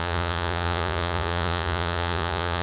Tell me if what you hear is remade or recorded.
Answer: remade